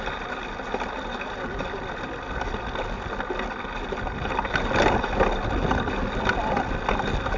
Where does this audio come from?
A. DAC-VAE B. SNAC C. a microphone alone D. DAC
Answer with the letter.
C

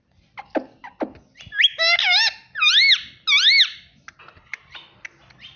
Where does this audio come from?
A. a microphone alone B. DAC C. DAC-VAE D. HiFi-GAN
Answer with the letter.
A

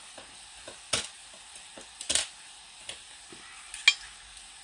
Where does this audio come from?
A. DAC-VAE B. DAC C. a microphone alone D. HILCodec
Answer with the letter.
C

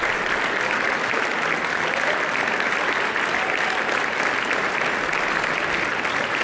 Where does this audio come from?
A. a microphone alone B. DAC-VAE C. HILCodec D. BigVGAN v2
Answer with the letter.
A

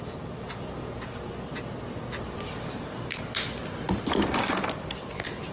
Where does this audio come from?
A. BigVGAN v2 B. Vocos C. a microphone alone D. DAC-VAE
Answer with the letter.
C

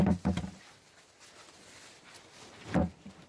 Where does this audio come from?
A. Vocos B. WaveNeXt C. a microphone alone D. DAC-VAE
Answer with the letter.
C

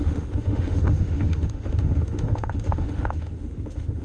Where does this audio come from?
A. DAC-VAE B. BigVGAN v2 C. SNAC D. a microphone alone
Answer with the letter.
A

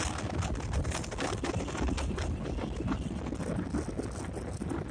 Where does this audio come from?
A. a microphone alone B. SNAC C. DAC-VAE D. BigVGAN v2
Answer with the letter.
A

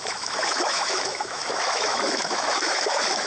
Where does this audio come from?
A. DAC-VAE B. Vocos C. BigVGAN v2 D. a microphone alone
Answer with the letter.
A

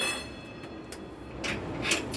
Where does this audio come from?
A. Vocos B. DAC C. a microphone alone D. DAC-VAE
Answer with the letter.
C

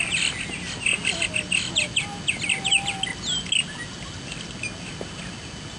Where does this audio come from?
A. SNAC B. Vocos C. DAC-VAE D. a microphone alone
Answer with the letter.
D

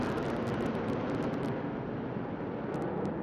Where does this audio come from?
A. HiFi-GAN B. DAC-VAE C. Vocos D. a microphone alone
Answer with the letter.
D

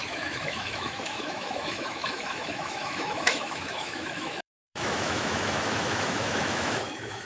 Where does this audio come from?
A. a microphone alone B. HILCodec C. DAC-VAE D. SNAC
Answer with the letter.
C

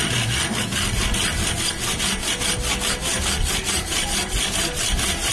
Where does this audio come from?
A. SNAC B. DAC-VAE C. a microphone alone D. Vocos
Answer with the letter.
C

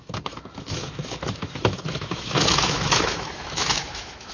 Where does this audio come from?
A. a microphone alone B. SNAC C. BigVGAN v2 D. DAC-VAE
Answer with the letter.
D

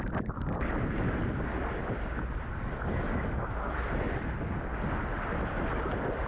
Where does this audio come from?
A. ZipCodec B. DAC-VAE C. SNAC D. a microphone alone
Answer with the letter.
D